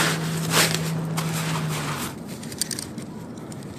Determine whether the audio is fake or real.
real